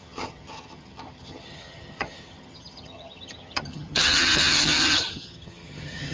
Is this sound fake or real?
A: fake